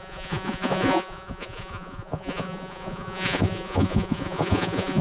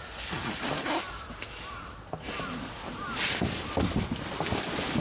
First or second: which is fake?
first